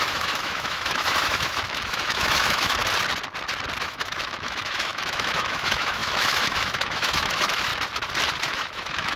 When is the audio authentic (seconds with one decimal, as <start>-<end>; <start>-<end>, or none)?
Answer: 2.8-3.8; 7.7-8.5

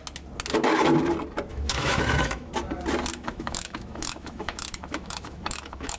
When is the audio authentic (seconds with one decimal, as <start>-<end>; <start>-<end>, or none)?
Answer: 0.0-1.5; 2.5-3.1

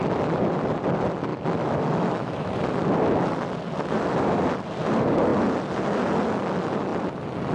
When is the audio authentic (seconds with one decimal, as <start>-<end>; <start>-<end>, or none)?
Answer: 0.0-1.3; 2.6-7.5

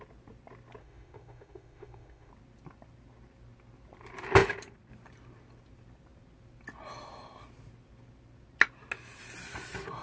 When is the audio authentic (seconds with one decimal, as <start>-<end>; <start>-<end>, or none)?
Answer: 0.0-0.8; 2.3-10.0

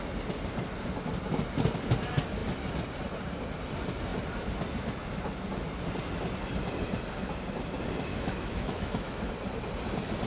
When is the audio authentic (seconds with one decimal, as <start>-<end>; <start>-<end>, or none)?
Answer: 0.0-8.1; 9.3-10.3

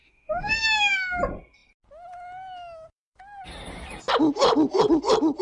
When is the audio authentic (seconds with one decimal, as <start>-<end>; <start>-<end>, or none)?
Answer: 1.2-5.4